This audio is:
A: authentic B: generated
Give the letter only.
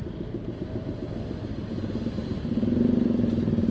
A